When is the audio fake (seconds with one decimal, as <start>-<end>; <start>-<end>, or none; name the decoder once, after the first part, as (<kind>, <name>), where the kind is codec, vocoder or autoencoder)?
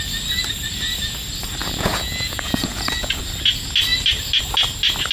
1.6-3.2 (vocoder, Vocos)